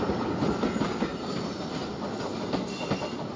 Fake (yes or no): no